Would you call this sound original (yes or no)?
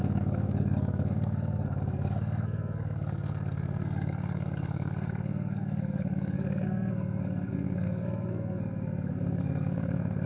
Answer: no